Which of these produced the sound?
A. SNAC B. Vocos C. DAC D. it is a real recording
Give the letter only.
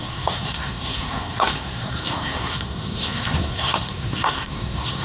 A